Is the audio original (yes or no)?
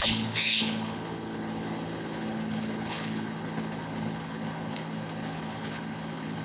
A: no